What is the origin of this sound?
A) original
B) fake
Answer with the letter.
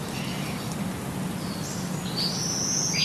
A